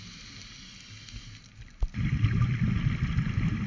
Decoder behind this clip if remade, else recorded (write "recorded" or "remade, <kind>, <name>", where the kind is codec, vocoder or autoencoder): recorded